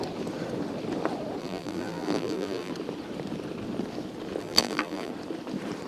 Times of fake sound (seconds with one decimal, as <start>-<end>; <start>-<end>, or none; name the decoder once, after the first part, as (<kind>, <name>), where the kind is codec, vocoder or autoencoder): 1.4-2.7 (vocoder, BigVGAN v2); 4.4-5.1